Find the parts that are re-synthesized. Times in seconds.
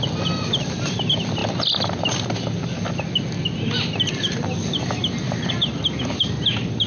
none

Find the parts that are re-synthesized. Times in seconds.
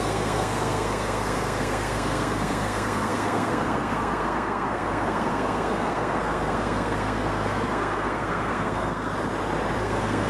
0.0-9.1 (codec, SNAC); 9.8-10.3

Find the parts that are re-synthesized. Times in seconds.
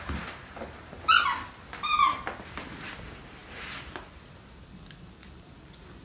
none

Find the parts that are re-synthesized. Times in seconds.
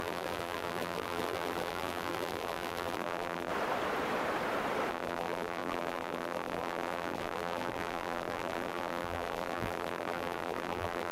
0.0-3.5 (vocoder, BigVGAN v2); 4.9-11.1